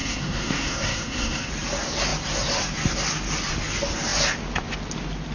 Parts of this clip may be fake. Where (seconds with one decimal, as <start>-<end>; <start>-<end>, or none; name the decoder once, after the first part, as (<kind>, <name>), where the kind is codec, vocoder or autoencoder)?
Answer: 0.0-1.5 (codec, SNAC)